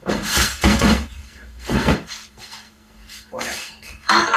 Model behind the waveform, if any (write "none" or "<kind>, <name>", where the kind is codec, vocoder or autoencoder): codec, SNAC